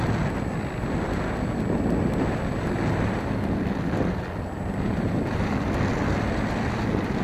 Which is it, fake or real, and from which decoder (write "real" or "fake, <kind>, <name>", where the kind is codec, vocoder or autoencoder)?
real